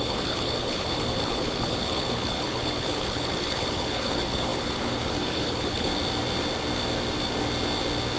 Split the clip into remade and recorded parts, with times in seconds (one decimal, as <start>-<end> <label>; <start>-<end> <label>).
0.0-5.9 remade; 5.9-8.2 recorded